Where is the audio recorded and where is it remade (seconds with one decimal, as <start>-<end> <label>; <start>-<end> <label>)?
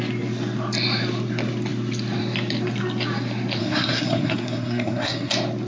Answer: 0.0-3.6 recorded; 3.6-5.3 remade; 5.3-5.7 recorded